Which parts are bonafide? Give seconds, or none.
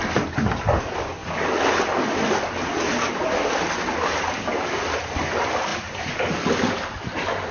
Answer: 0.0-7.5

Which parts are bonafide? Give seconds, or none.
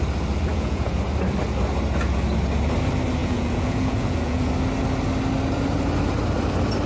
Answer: 0.0-0.5; 1.0-3.2; 4.5-6.9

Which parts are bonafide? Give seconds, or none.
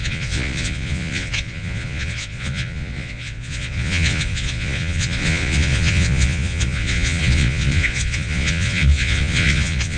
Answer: none